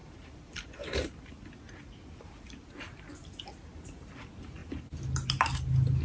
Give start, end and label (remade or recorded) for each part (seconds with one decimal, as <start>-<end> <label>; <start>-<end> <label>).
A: 0.0-2.4 remade; 2.4-6.0 recorded